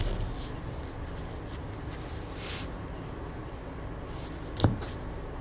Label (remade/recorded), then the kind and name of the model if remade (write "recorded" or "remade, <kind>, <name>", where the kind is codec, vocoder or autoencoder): recorded